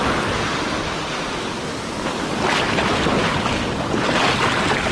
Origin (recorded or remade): recorded